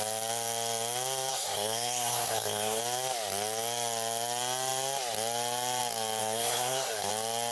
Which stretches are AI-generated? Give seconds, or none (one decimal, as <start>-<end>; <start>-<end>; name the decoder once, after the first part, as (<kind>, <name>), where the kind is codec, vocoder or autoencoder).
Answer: 1.3-2.8 (codec, SNAC); 6.2-7.1